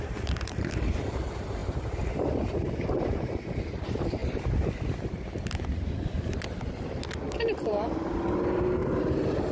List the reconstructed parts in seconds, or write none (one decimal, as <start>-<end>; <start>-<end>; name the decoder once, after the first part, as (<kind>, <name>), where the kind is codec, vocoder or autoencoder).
0.0-4.2 (vocoder, BigVGAN v2); 7.3-9.5